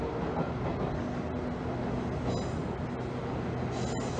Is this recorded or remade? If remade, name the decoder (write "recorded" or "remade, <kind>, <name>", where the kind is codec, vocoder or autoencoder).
recorded